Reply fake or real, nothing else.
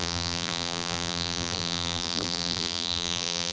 fake